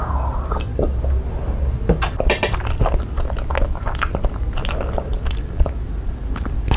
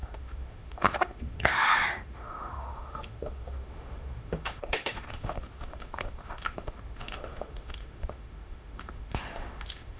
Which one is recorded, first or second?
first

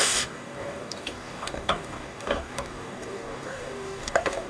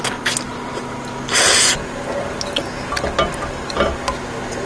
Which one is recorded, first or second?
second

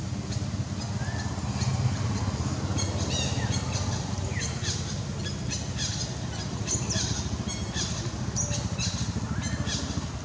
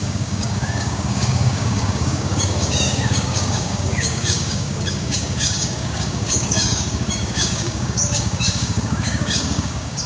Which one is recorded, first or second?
first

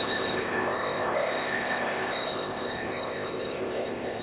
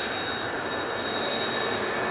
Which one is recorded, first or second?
second